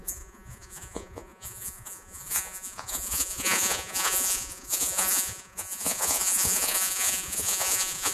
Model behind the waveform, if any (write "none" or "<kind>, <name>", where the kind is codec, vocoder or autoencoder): vocoder, Vocos